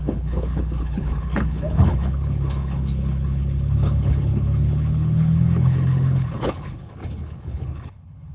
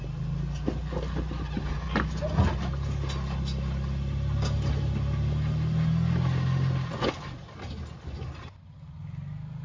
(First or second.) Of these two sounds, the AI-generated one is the first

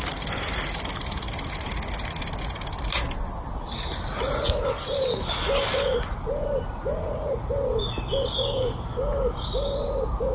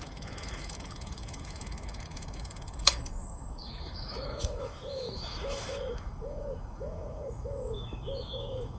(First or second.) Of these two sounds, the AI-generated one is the second